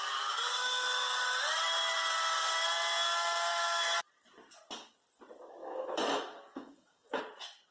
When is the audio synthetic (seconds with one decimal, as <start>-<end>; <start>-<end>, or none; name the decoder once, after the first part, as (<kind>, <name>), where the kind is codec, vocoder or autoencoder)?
3.5-4.0 (autoencoder, DAC-VAE); 5.6-7.2